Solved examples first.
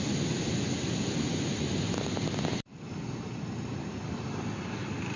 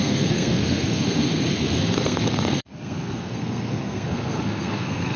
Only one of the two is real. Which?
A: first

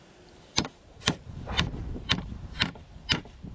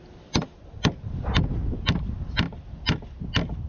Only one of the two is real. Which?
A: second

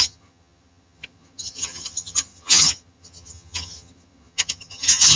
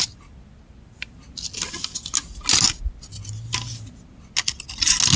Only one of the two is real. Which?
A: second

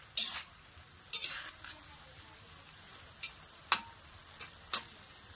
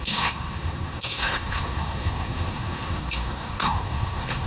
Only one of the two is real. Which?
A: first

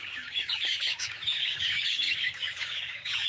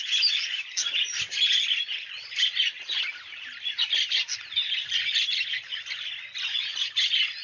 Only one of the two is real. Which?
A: second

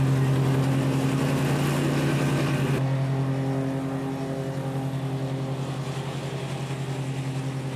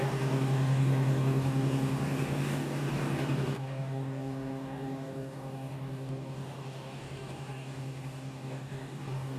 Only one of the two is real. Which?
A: first